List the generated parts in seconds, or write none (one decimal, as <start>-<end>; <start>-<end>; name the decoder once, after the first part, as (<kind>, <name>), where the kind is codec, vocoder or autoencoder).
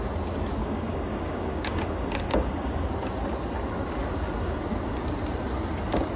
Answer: 0.6-2.9 (codec, DAC)